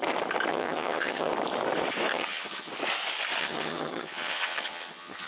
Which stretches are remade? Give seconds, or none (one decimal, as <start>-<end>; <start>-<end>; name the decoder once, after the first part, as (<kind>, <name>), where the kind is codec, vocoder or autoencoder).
0.5-1.3 (vocoder, HiFi-GAN); 2.1-2.7; 3.4-5.3